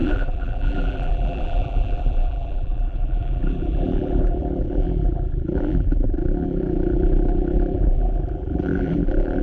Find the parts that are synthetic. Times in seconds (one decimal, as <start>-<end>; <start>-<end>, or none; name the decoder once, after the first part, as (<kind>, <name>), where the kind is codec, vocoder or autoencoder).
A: 0.0-9.4 (vocoder, BigVGAN v2)